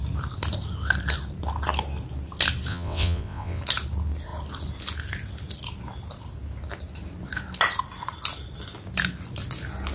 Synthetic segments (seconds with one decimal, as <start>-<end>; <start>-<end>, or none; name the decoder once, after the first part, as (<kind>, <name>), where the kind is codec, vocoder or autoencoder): 2.7-3.6 (vocoder, WaveNeXt)